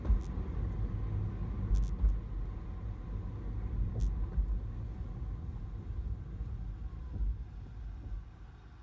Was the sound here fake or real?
real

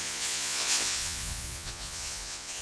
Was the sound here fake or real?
fake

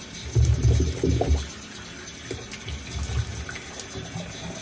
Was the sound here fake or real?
real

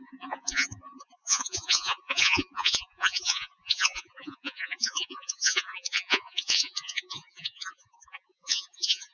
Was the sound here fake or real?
fake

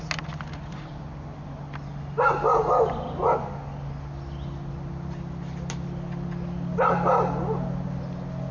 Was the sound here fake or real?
real